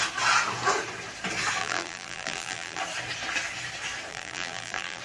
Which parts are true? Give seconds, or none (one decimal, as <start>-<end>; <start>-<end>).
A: 0.0-1.6; 2.8-4.1